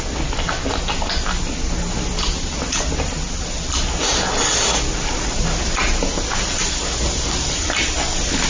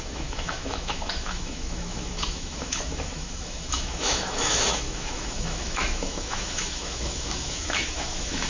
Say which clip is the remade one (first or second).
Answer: second